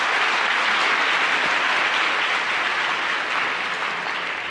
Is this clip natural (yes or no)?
yes